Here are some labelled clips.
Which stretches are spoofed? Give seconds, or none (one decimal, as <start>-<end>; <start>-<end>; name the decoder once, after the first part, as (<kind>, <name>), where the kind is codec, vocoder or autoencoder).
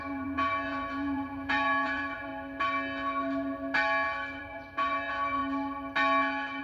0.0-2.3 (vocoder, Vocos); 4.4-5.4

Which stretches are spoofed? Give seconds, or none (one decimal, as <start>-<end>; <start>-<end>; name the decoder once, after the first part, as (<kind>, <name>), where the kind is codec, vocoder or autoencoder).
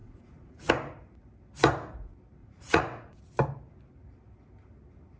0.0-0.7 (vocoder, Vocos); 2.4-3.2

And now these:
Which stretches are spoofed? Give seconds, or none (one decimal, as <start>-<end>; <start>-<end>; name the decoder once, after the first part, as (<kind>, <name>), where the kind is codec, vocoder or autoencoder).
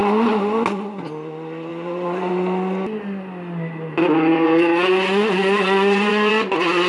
1.7-2.3 (vocoder, Vocos); 4.3-6.3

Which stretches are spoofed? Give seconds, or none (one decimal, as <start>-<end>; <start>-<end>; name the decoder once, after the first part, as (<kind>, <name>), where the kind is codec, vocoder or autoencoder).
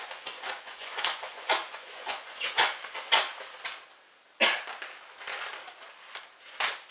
0.0-2.8 (vocoder, Vocos)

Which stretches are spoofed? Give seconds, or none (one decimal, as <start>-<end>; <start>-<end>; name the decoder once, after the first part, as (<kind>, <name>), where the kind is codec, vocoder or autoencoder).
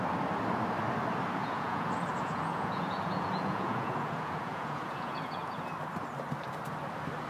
1.4-5.7 (vocoder, Vocos)